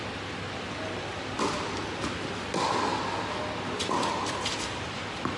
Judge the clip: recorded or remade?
recorded